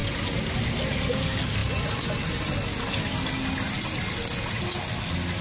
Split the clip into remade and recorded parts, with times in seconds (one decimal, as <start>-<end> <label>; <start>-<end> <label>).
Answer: 0.0-0.6 remade; 0.6-5.4 recorded